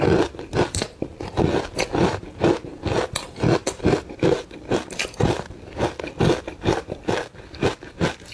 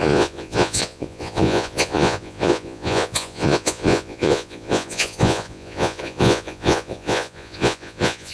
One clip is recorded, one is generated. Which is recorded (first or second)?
first